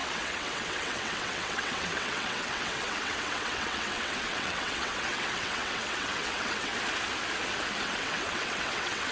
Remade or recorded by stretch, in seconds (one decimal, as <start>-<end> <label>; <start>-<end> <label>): 0.0-6.7 remade; 6.7-7.8 recorded; 7.8-9.1 remade